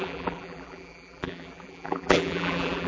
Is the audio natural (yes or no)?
no